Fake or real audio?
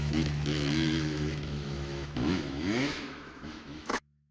fake